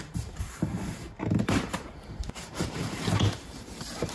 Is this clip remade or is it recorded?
remade